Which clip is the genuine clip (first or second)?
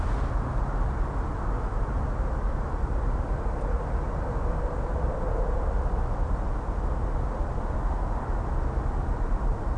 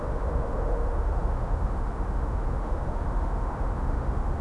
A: first